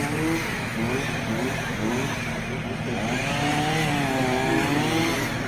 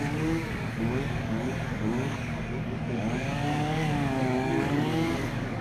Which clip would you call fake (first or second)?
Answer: second